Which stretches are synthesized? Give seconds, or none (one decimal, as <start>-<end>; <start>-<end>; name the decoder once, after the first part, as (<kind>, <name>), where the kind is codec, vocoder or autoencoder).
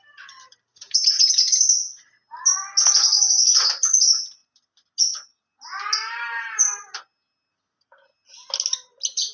0.7-1.6 (vocoder, Vocos)